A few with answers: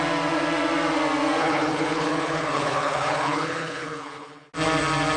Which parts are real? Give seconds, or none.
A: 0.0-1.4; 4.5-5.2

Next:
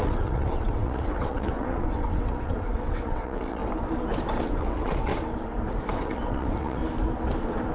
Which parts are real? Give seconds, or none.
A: 3.6-4.4; 5.1-5.9; 6.8-7.7

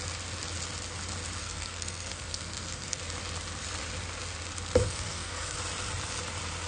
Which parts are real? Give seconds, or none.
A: 0.0-1.4; 3.0-4.8; 5.6-6.7

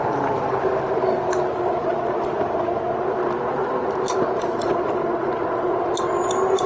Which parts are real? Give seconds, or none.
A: 0.7-1.5; 2.0-3.6; 4.9-6.7

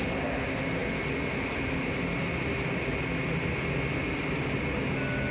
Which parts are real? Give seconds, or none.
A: 0.0-5.3

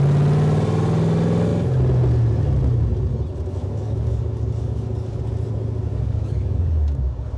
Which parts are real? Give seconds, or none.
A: 0.0-3.6; 5.2-5.9